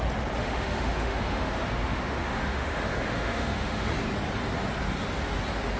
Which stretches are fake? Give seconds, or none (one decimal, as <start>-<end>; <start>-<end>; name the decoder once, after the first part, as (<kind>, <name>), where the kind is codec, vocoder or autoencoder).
0.4-3.9 (autoencoder, DAC-VAE)